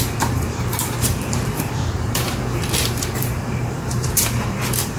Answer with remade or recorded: remade